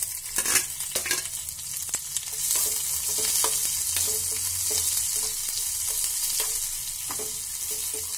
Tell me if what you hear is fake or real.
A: real